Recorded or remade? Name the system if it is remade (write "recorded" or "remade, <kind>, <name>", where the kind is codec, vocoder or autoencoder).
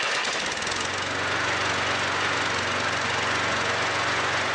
remade, vocoder, Vocos